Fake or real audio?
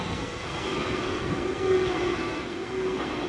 fake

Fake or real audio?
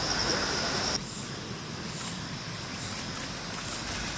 real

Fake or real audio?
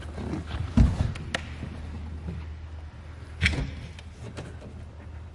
real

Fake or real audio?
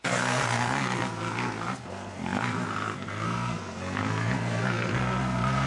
fake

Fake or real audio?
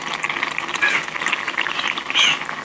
real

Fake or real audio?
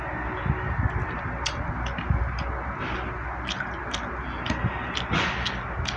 real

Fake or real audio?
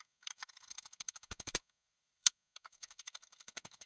fake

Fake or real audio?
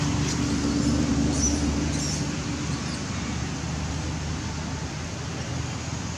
real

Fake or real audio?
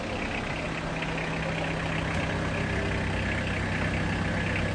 real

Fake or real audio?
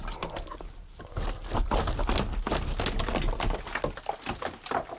real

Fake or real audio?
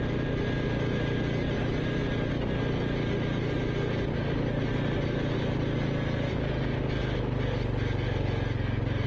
real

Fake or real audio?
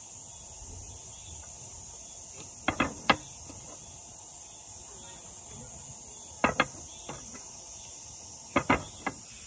real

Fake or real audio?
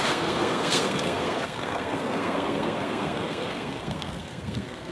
fake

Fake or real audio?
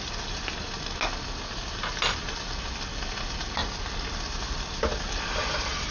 real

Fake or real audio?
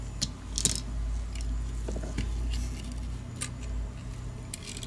real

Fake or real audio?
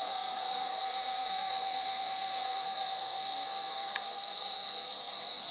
fake